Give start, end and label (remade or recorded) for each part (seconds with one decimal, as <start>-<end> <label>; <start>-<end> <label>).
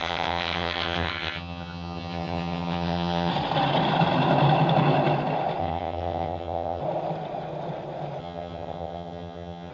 0.0-3.3 remade; 3.3-5.6 recorded; 5.6-6.8 remade; 6.8-8.2 recorded; 8.2-9.7 remade